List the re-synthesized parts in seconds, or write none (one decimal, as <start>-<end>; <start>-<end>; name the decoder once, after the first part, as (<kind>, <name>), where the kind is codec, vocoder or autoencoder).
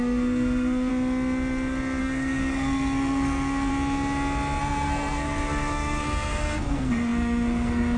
0.0-0.9 (codec, SNAC); 2.0-3.7; 4.6-8.0